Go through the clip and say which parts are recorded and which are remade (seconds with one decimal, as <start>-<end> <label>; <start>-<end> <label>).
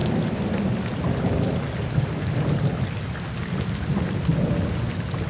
0.0-5.3 recorded